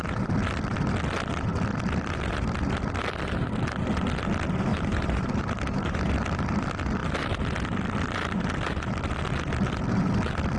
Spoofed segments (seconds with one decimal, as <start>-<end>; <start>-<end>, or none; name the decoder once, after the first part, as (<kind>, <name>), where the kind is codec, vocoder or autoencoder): 4.7-6.0 (vocoder, BigVGAN v2)